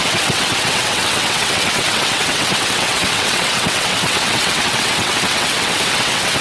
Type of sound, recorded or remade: remade